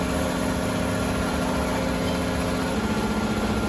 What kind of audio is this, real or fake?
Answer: real